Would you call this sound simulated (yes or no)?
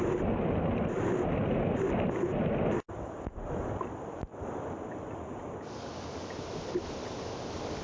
no